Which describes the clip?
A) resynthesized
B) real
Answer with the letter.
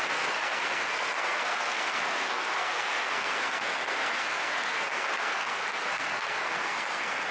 A